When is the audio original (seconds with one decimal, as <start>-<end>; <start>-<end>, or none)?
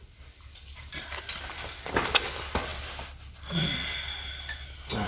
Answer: 0.0-5.1